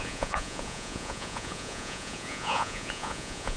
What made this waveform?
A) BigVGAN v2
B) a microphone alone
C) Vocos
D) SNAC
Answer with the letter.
C